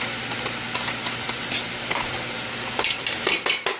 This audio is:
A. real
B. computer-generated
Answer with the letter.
A